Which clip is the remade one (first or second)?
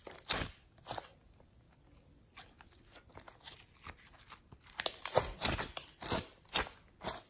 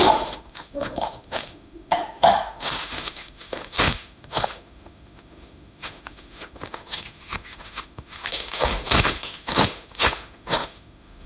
second